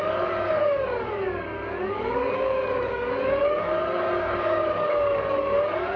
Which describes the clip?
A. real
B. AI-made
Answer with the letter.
B